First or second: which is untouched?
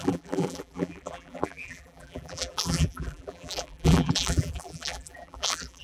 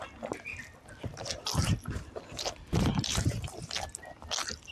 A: second